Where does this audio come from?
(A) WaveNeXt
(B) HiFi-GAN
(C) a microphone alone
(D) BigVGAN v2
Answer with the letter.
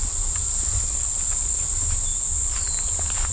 C